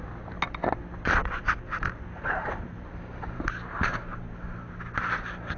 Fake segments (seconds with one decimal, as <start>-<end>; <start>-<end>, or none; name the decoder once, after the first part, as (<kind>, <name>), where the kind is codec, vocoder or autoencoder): 1.2-3.4 (vocoder, BigVGAN v2)